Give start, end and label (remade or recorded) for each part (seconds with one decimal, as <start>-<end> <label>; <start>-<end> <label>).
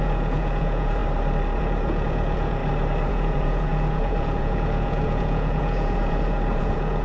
0.0-1.0 remade; 1.0-1.6 recorded; 1.6-2.6 remade; 2.6-3.1 recorded; 3.1-7.0 remade